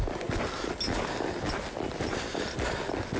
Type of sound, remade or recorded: recorded